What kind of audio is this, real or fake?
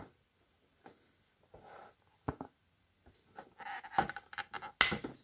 real